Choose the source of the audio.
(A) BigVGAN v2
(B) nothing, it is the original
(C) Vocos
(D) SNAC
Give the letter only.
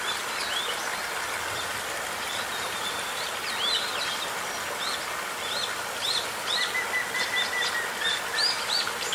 B